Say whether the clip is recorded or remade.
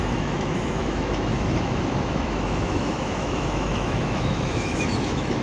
remade